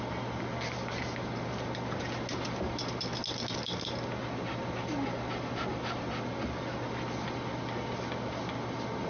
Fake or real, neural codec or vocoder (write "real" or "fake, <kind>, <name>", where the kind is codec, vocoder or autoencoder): real